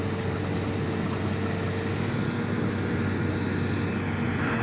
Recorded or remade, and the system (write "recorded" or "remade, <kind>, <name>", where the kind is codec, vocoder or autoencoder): recorded